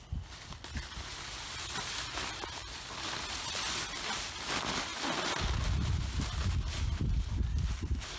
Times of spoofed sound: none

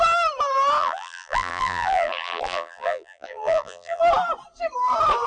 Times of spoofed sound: 0.8-4.0 (vocoder, BigVGAN v2)

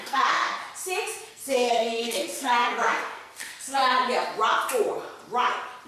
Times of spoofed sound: 0.0-0.6 (codec, SNAC); 1.3-3.8

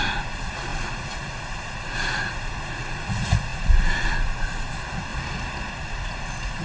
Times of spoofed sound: 0.0-5.1 (vocoder, Vocos); 5.7-6.6

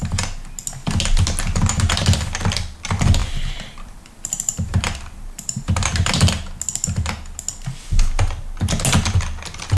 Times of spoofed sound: 3.2-6.2 (vocoder, BigVGAN v2)